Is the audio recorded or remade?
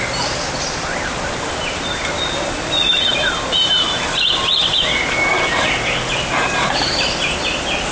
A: recorded